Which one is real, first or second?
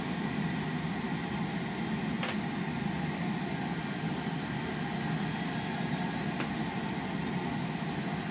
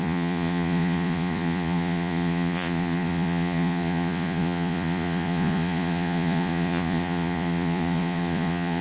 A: first